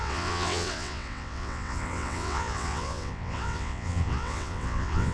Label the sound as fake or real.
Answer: fake